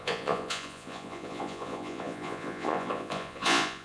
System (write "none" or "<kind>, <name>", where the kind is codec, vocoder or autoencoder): vocoder, Vocos